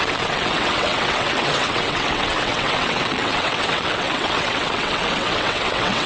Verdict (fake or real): fake